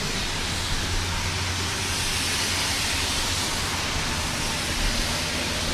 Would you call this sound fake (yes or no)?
no